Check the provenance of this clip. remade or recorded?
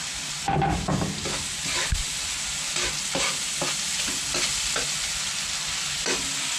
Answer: recorded